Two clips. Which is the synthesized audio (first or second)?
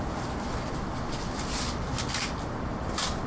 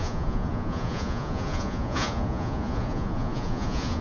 second